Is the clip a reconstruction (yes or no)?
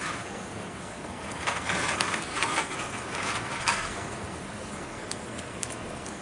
yes